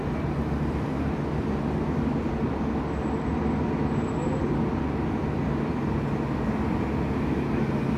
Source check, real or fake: real